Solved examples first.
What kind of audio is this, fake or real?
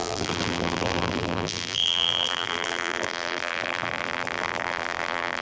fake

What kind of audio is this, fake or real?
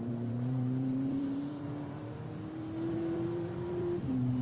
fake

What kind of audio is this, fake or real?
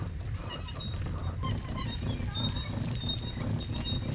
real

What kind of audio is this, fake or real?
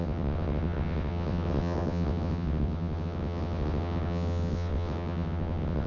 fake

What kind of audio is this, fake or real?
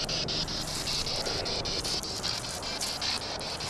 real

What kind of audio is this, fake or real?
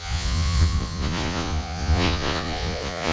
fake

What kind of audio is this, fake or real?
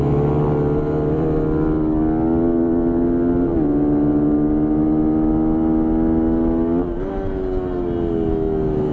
real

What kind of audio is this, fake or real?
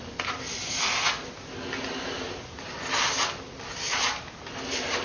real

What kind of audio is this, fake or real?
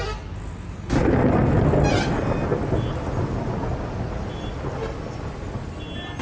real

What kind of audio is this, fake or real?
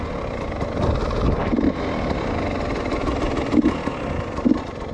real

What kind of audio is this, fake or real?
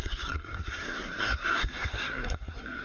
fake